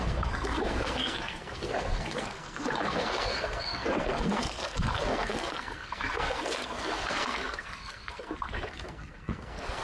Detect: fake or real fake